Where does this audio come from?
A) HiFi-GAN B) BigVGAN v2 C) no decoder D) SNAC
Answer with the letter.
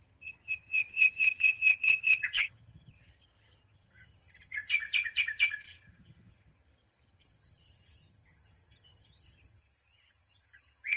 A